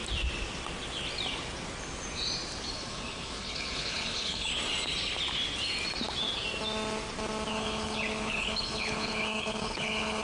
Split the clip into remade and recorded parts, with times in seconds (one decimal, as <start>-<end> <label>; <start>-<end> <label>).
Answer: 0.0-2.7 recorded; 2.7-4.5 remade; 4.5-7.5 recorded; 7.5-10.2 remade